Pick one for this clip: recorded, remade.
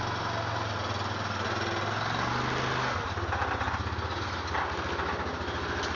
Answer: recorded